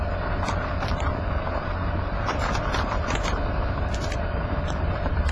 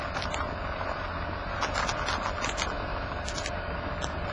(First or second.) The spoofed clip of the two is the first